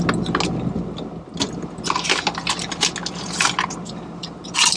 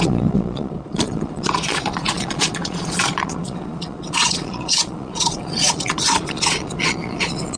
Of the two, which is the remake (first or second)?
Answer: second